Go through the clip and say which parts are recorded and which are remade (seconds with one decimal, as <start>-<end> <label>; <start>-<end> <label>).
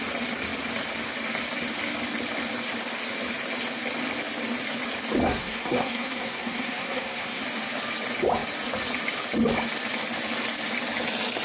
0.0-5.2 recorded; 5.2-7.4 remade; 7.4-11.4 recorded